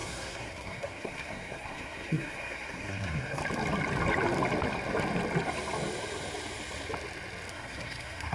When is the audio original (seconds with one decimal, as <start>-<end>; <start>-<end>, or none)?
3.4-7.5

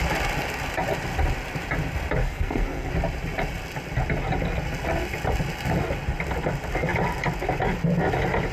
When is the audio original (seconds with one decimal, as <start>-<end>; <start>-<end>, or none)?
0.0-2.2; 2.9-8.5

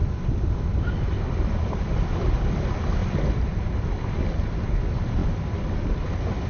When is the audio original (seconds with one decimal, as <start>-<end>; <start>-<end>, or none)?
0.0-6.5

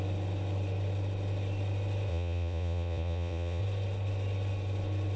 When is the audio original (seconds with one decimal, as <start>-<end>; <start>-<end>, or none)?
0.0-2.1; 3.6-5.2

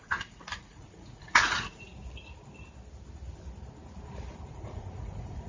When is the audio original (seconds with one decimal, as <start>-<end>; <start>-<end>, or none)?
1.9-4.5

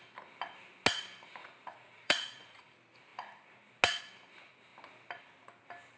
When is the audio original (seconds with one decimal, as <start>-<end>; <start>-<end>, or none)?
0.0-1.4; 2.6-6.0

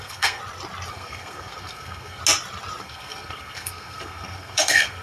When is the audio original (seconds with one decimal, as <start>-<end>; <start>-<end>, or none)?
0.4-0.9; 2.2-2.8